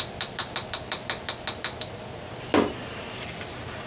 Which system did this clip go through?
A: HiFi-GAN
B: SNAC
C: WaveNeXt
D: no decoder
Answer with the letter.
D